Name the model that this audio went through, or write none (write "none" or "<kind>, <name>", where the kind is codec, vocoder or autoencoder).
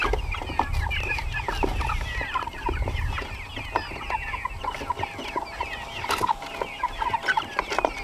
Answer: none